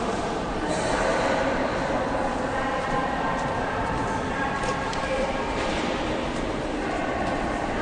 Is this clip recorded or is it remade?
remade